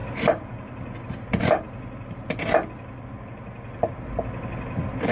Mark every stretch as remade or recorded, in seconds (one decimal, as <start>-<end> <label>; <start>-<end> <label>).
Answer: 0.0-5.1 recorded